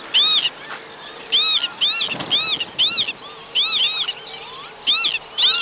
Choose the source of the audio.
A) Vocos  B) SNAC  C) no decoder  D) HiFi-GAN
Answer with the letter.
C